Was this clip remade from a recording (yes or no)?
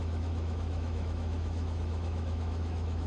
yes